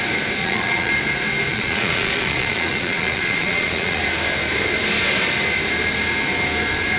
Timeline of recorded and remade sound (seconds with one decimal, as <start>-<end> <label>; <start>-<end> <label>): 0.0-0.4 recorded; 0.4-0.9 remade; 0.9-1.5 recorded; 1.5-4.0 remade; 4.0-7.0 recorded